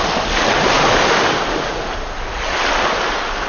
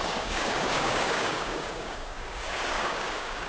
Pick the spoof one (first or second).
second